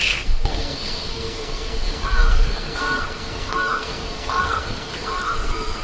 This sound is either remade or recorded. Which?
remade